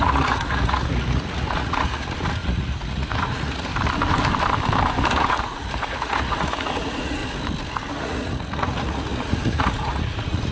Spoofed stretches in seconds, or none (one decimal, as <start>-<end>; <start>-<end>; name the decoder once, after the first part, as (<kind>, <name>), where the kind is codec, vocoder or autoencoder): 0.0-3.7 (vocoder, Vocos); 5.1-7.2; 7.9-10.5